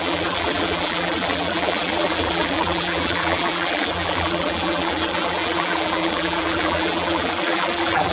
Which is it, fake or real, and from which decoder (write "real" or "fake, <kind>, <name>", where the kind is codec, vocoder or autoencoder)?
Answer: fake, vocoder, BigVGAN v2